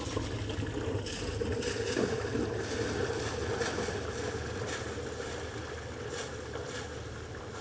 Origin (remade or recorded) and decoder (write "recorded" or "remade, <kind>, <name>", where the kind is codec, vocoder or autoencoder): recorded